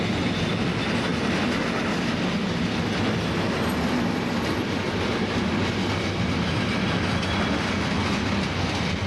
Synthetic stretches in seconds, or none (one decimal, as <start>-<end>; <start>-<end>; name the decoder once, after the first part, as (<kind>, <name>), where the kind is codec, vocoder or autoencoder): none